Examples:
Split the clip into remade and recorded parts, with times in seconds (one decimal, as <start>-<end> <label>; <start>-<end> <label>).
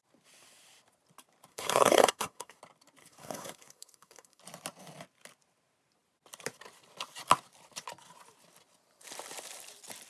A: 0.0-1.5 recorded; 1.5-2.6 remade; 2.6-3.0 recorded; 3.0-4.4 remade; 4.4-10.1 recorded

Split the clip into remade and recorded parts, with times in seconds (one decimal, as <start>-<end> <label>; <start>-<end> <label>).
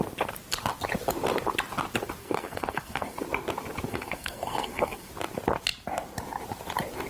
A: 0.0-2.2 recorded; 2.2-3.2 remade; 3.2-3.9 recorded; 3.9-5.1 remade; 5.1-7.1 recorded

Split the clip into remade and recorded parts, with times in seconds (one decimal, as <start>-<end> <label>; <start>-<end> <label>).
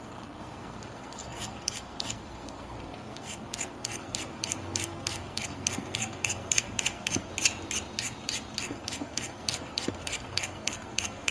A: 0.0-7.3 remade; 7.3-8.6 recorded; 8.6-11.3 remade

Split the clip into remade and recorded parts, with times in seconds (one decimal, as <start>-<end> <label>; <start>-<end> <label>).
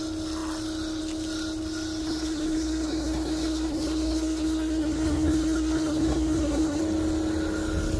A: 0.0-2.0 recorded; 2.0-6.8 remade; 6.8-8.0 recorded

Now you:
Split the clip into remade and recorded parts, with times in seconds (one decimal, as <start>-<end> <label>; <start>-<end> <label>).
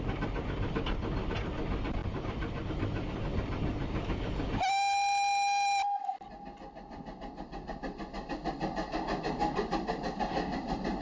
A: 0.0-11.0 recorded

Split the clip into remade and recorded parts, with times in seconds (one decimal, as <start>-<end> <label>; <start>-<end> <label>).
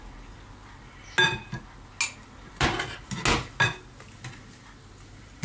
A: 0.0-5.4 recorded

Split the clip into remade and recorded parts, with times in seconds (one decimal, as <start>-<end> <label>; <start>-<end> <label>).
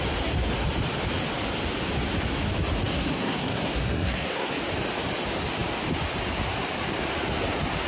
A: 0.0-2.9 recorded; 2.9-4.5 remade; 4.5-7.9 recorded